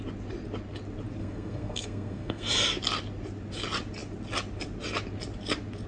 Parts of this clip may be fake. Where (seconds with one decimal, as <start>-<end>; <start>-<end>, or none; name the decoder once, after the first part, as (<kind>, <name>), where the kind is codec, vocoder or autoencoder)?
1.2-2.5 (codec, SNAC)

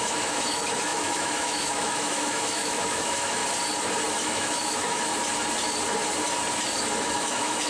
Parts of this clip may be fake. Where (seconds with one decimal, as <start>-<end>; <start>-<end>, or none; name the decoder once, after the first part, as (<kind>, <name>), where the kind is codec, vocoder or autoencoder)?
0.0-3.4 (autoencoder, DAC-VAE); 4.1-5.1; 7.0-7.7

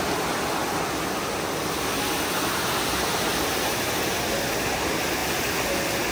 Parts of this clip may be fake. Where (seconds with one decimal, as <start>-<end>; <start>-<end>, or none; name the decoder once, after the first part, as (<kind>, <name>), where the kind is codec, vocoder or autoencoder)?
none

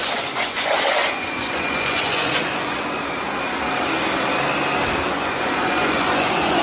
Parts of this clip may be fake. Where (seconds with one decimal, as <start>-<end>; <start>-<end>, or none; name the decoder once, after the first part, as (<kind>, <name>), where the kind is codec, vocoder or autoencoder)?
0.0-3.0 (vocoder, Vocos); 5.1-6.6

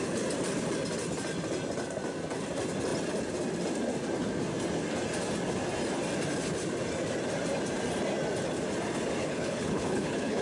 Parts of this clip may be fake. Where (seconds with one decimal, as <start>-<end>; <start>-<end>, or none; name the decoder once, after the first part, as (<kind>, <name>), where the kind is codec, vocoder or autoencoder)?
9.2-10.4 (codec, HILCodec)

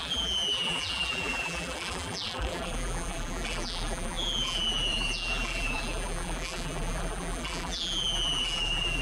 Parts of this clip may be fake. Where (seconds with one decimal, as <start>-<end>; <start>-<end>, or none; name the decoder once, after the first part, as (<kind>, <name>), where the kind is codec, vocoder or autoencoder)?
0.0-9.0 (vocoder, BigVGAN v2)

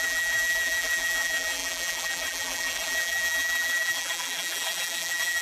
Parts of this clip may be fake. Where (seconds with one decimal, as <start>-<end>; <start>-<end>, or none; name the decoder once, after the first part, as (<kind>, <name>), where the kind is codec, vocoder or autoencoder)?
0.0-5.4 (vocoder, BigVGAN v2)